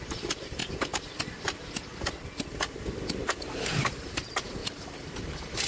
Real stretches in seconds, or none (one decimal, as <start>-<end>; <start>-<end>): 1.9-2.5